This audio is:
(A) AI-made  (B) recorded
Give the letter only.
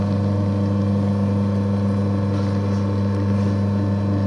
B